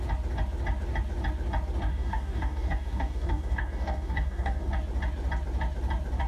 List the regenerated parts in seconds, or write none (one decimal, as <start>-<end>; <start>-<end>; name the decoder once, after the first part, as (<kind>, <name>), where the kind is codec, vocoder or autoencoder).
1.9-4.7 (codec, DAC)